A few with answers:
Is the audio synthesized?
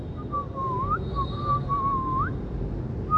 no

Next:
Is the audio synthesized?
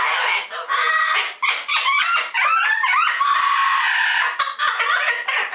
no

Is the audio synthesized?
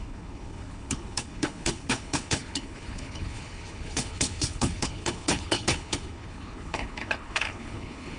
yes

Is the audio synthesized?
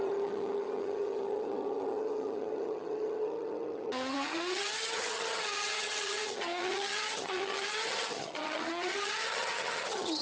yes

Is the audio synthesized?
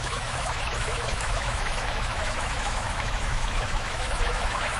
yes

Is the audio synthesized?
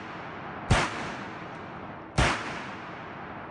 no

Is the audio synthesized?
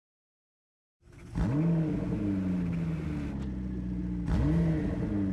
no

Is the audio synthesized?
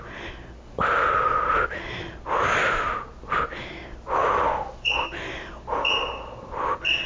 no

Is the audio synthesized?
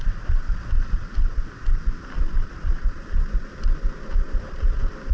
no